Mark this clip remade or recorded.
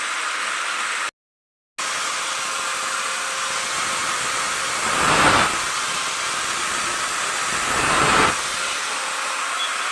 recorded